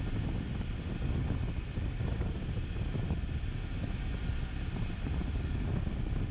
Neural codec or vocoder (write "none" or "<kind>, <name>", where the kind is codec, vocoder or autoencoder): none